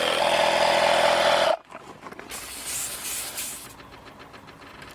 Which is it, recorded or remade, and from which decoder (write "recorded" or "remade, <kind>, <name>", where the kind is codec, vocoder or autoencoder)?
recorded